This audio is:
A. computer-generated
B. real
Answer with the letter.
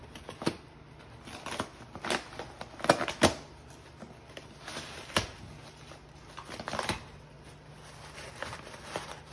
B